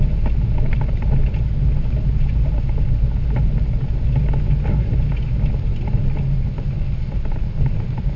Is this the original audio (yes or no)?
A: yes